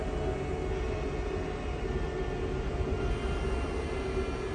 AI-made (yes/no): no